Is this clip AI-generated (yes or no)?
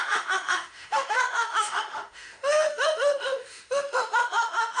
yes